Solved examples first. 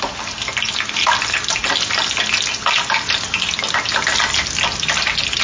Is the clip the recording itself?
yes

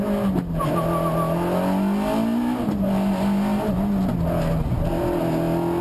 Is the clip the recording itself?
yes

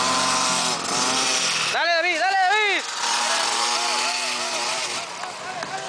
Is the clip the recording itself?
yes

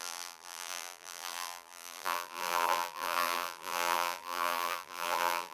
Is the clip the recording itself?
no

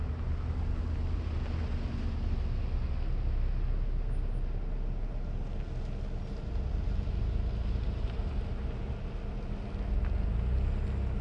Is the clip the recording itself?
yes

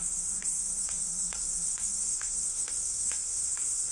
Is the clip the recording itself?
no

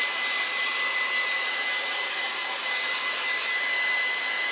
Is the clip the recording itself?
yes